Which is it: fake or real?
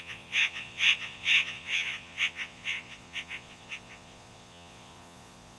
fake